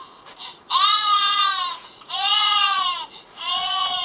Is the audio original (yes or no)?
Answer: no